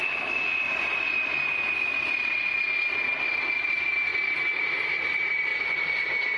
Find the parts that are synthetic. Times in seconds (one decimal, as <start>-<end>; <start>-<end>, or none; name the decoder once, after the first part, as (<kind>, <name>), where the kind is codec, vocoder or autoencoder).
none

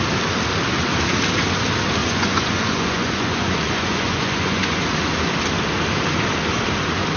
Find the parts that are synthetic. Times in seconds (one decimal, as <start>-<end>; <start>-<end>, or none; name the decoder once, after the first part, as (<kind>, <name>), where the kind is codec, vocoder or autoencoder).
2.0-4.8 (vocoder, Vocos)

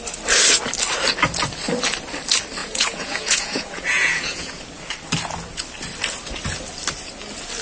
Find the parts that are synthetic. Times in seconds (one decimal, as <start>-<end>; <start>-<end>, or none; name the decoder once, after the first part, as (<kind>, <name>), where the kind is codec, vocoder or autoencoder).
2.6-4.6 (vocoder, Vocos)

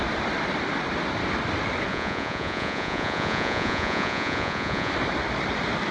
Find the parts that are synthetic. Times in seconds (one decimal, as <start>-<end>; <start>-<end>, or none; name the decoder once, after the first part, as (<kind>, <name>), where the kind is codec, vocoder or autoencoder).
1.9-4.9 (vocoder, Vocos)